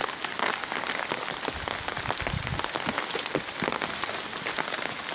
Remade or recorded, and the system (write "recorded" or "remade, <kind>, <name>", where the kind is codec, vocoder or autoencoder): recorded